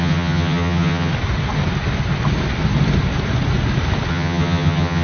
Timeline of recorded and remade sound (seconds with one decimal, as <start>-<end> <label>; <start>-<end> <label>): 0.0-1.1 remade; 1.1-4.1 recorded; 4.1-5.0 remade